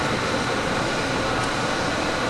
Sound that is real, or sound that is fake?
real